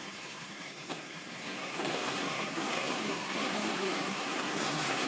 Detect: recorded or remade remade